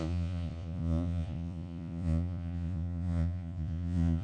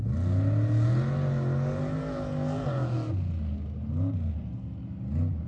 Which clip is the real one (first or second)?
second